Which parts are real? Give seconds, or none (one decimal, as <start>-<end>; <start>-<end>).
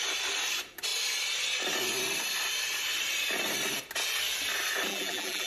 0.0-4.9